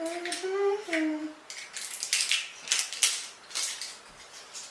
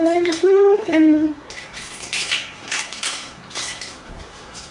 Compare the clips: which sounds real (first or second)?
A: first